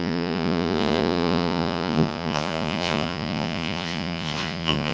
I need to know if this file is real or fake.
fake